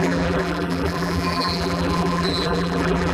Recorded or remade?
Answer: remade